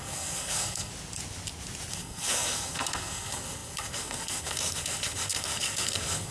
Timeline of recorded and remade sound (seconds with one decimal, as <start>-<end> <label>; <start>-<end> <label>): 0.0-0.9 remade; 0.9-1.9 recorded; 1.9-6.3 remade